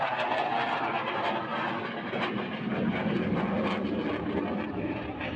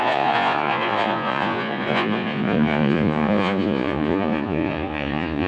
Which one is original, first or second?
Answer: first